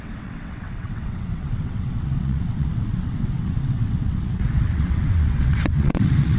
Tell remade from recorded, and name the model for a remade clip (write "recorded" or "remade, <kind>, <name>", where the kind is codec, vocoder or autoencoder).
remade, vocoder, WaveNeXt